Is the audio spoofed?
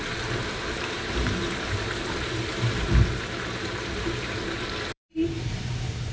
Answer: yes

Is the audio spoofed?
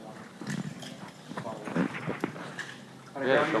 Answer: no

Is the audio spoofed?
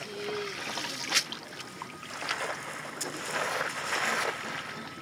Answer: no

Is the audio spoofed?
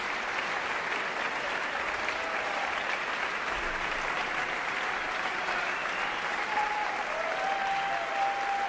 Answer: no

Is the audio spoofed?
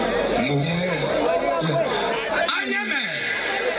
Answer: no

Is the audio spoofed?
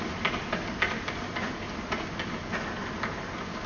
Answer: no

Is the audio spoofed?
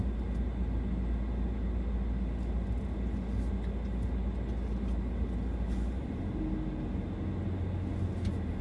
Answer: no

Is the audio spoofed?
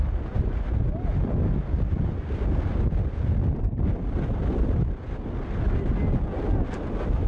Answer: no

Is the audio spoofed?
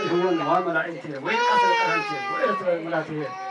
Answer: no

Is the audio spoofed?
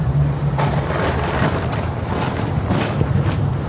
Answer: yes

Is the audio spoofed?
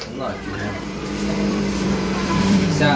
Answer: yes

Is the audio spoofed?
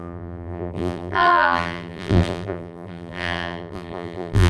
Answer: yes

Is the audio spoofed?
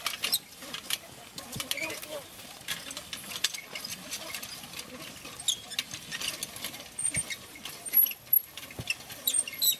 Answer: no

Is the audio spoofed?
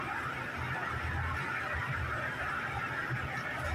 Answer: no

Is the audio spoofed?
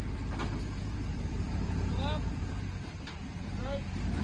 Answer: yes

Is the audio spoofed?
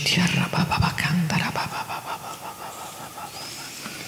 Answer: no